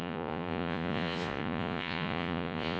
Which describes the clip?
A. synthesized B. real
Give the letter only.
A